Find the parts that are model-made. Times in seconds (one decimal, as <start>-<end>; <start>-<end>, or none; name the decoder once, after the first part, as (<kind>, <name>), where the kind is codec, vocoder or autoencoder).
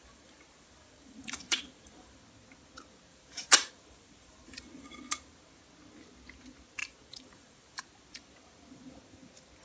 0.0-2.2 (vocoder, BigVGAN v2); 3.1-5.1; 6.8-7.8